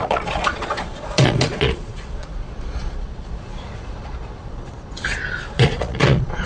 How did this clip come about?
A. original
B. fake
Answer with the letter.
B